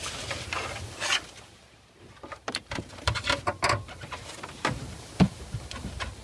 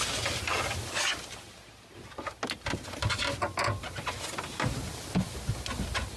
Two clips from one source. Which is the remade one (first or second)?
first